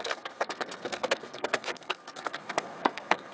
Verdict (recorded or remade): remade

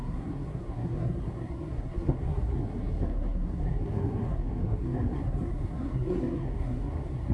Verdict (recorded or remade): remade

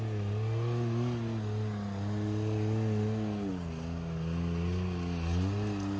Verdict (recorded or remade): recorded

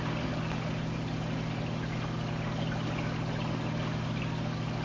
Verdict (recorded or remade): recorded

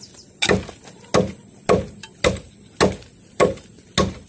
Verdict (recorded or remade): recorded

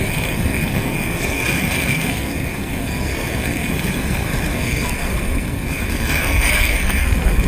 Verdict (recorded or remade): remade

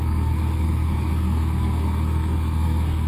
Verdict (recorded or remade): remade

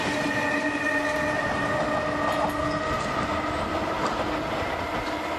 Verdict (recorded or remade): recorded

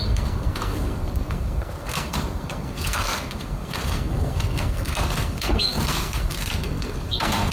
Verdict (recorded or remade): remade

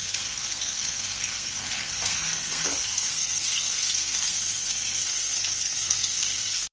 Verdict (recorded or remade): remade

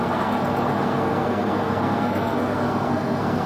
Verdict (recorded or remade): remade